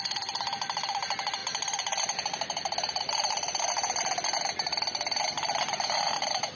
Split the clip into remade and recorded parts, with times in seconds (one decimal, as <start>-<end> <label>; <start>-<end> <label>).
0.0-6.6 recorded